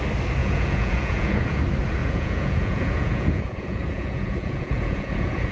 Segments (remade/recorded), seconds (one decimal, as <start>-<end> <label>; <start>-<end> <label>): 0.0-0.4 recorded; 0.4-1.6 remade; 1.6-2.0 recorded; 2.0-5.5 remade